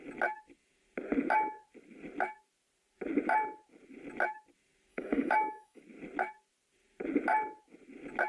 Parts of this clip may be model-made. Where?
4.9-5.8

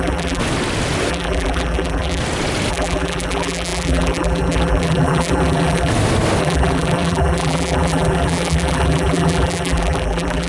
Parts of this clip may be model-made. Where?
0.0-0.4; 1.1-2.2; 2.7-5.9; 6.4-10.5

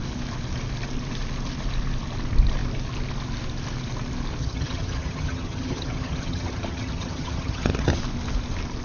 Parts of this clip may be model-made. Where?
4.4-8.0